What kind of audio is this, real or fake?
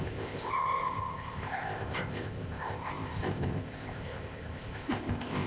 fake